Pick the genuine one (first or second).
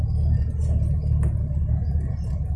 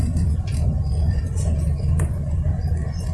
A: first